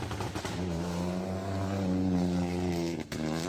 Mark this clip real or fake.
real